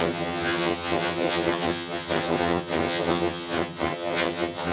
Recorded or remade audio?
remade